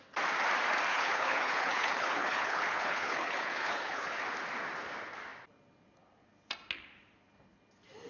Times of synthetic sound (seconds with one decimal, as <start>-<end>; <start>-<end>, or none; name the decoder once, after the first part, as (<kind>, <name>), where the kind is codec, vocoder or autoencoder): 0.9-4.2 (codec, HILCodec)